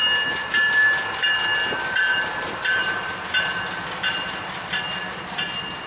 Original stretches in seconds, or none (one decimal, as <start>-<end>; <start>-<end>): 0.0-5.9